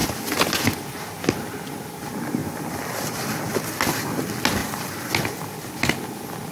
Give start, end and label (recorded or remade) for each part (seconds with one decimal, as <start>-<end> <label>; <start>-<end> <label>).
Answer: 0.0-6.5 recorded